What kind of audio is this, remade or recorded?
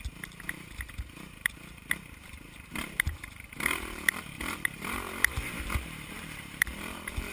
remade